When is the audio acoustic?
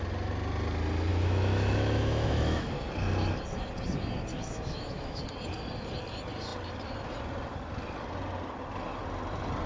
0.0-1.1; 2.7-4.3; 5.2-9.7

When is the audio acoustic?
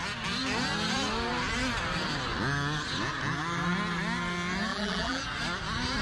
0.0-4.7; 5.2-6.0